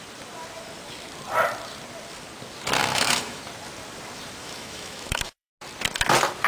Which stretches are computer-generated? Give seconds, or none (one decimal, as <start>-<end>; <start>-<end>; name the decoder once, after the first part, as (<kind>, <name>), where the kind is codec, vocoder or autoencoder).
2.8-3.4 (autoencoder, DAC-VAE); 4.4-5.5